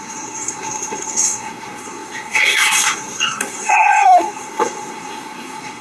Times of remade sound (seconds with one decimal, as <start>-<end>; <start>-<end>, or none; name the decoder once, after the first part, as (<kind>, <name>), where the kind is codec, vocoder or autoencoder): 0.0-5.8 (codec, SNAC)